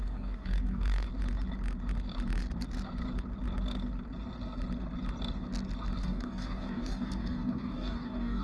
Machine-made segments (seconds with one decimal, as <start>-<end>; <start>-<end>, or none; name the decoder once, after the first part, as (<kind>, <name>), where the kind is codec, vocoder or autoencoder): 0.0-1.1 (codec, DAC); 6.0-8.4